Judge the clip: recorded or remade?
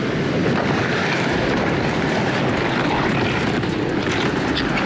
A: recorded